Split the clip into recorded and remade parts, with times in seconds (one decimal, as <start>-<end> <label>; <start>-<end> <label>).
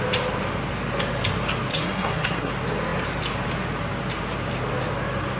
0.0-1.7 recorded; 1.7-2.5 remade; 2.5-5.4 recorded